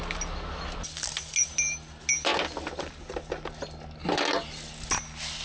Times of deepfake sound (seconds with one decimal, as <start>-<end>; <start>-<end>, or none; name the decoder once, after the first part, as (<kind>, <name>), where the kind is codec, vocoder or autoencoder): none